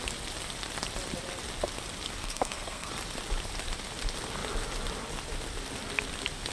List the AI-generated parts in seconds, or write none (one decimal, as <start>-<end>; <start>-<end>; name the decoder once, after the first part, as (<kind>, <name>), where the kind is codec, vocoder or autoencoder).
2.2-2.9 (codec, SNAC)